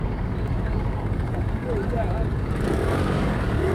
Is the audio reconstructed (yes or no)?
yes